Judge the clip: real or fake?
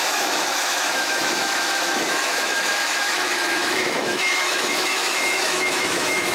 fake